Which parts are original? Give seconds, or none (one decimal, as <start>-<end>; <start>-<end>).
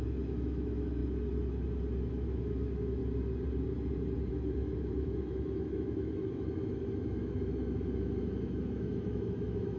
1.0-2.0; 3.0-4.3